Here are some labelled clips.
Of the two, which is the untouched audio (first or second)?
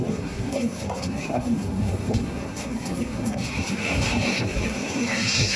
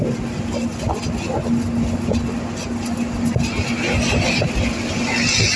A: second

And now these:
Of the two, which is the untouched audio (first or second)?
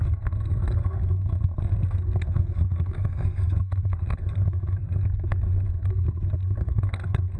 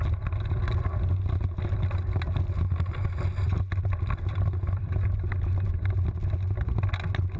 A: second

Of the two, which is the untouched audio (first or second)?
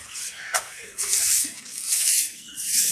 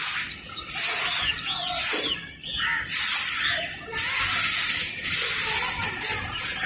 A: second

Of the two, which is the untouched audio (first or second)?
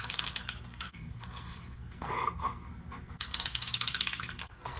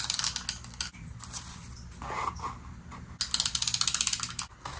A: second